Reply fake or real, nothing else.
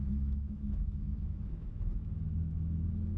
fake